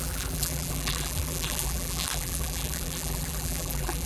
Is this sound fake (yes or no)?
yes